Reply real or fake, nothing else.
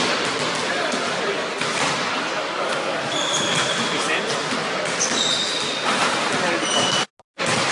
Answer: real